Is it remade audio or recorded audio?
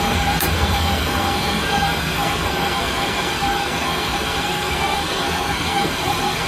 remade